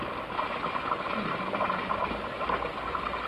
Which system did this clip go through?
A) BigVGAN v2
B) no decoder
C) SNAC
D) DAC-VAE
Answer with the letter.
B